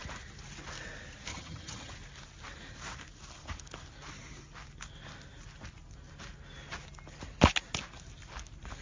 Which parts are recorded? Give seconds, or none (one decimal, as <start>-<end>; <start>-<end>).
0.0-1.3; 1.9-8.8

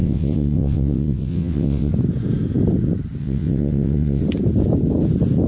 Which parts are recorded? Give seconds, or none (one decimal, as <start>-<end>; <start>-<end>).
1.9-3.2; 4.2-5.5

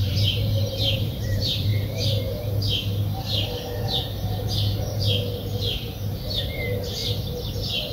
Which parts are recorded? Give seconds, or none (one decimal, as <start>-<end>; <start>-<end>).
1.7-6.4; 7.0-7.9

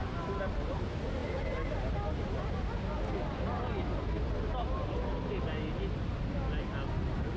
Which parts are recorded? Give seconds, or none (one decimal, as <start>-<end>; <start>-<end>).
0.0-7.4

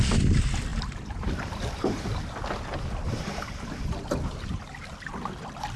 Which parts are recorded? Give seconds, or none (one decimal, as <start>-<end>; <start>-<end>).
0.0-5.8

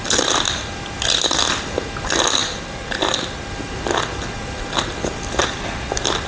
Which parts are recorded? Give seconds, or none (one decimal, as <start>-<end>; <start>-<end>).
0.0-6.3

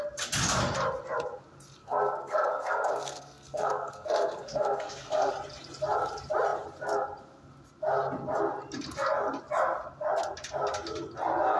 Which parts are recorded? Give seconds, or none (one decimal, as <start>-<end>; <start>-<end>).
0.0-1.8; 5.3-11.6

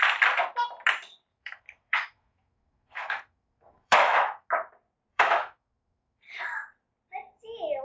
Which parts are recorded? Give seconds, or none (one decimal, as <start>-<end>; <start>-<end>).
0.0-1.3; 4.5-5.1; 6.2-7.8